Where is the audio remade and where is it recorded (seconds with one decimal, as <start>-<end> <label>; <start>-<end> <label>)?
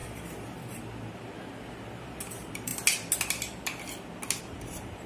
0.0-2.3 recorded; 2.3-2.7 remade; 2.7-4.4 recorded; 4.4-5.1 remade